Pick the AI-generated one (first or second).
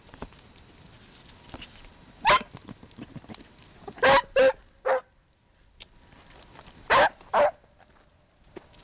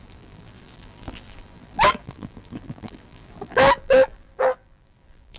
second